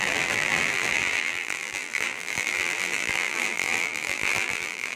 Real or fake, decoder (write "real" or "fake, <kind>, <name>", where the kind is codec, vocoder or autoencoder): fake, vocoder, BigVGAN v2